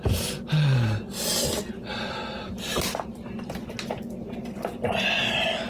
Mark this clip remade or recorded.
recorded